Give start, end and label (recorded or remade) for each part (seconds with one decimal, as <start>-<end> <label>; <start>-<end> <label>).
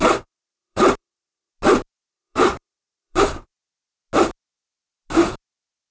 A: 0.0-1.5 remade; 1.5-2.1 recorded; 2.1-3.5 remade; 3.5-5.9 recorded